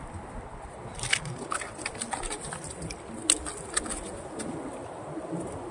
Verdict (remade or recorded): recorded